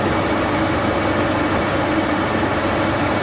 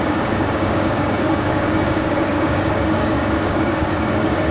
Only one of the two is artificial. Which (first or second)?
second